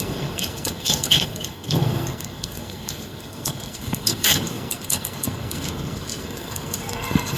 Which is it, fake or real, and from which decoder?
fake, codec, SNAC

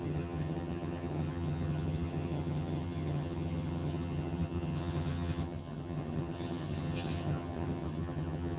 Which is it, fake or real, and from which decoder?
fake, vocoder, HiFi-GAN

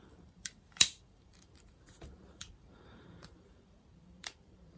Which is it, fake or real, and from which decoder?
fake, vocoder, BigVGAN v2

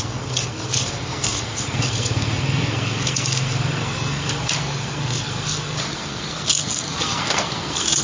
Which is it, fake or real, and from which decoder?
fake, codec, SNAC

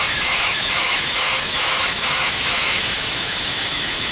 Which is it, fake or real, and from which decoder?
fake, autoencoder, DAC-VAE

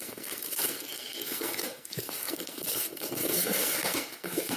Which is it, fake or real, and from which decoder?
fake, codec, SNAC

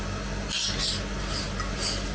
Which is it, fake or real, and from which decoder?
real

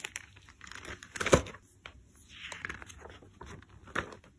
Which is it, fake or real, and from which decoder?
real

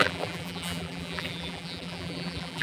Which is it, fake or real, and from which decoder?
fake, vocoder, BigVGAN v2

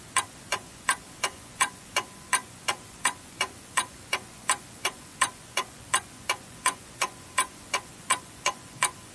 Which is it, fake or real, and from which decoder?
fake, vocoder, Vocos